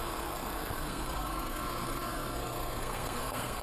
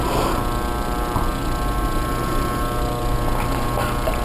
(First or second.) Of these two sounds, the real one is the second